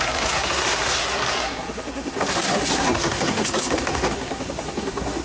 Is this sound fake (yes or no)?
yes